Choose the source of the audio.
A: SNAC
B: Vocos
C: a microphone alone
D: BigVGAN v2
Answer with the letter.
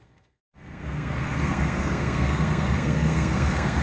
A